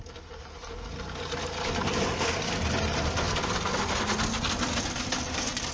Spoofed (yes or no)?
no